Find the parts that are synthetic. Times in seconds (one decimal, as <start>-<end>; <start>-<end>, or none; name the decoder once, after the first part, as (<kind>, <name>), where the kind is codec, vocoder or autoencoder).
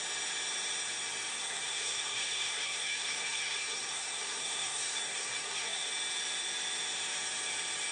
1.3-5.9 (codec, SNAC)